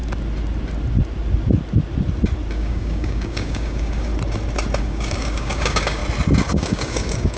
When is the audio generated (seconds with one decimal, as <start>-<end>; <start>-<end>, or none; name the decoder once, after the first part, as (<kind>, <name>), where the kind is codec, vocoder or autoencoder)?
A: 2.5-4.1 (codec, DAC); 4.8-6.0; 6.5-7.4